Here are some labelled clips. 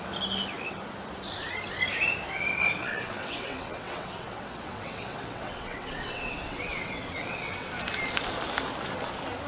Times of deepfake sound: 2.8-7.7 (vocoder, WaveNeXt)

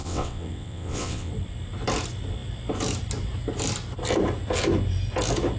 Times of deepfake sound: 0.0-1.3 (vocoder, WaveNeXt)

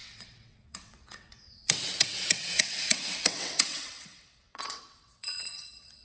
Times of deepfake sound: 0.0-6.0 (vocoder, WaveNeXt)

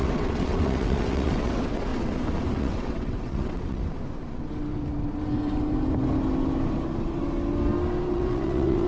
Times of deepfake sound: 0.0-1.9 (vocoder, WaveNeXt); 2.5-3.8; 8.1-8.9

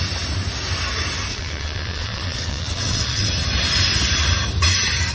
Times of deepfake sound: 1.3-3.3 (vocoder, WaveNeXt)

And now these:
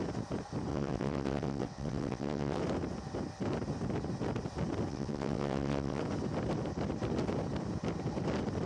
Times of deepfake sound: 0.7-2.6 (vocoder, WaveNeXt); 4.9-6.0

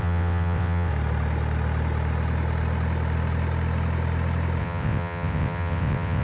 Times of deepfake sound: 0.0-0.9 (vocoder, WaveNeXt); 4.6-6.2